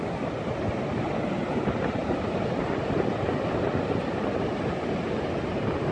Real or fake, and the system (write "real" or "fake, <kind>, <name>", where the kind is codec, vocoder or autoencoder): real